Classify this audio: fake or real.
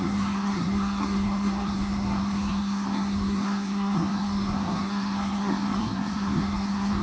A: fake